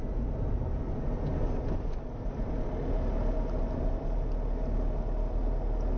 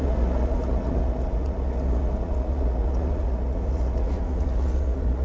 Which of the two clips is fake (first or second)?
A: second